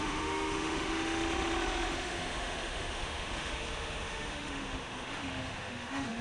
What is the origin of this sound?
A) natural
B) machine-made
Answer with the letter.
B